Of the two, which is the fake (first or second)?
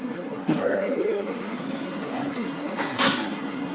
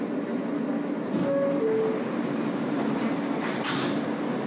first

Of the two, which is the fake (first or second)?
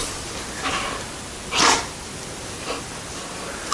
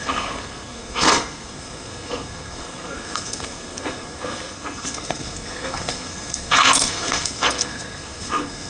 second